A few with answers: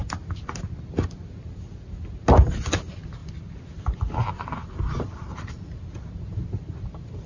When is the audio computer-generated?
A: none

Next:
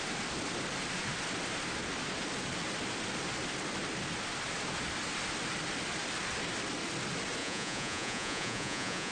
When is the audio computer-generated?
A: 7.4-9.1 (vocoder, Vocos)

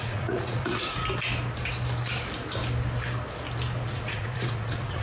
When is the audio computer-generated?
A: 0.0-1.0 (vocoder, Vocos); 3.9-5.0

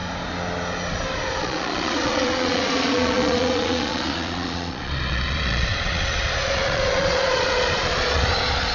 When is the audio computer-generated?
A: 1.4-8.7 (vocoder, Vocos)

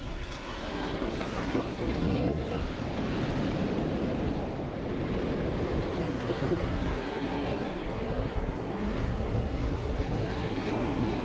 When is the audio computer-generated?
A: 0.0-2.6 (codec, SNAC); 6.0-11.2

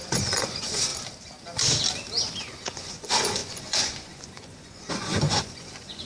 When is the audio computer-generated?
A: 0.0-0.9 (vocoder, Vocos); 2.4-6.1

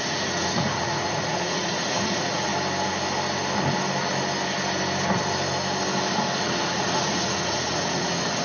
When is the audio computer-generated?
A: 0.0-2.5 (vocoder, Vocos); 6.4-8.4

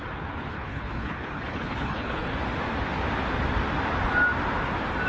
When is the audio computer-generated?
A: 0.5-2.3 (codec, HILCodec)